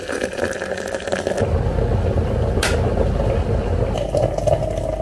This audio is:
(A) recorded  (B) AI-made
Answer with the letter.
A